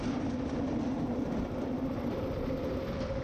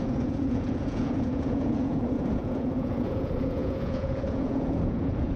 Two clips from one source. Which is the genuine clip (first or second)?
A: first